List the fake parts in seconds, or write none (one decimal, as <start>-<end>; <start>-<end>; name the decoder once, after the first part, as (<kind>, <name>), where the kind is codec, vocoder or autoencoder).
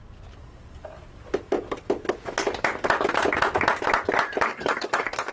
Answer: 4.5-5.3 (codec, DAC)